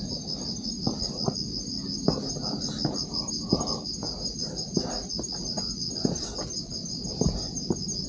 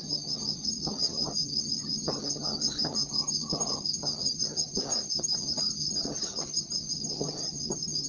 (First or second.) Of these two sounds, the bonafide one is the first